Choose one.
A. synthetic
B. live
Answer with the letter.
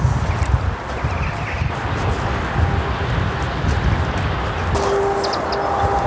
B